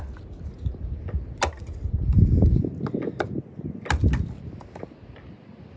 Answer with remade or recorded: recorded